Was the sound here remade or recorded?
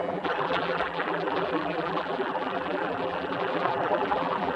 remade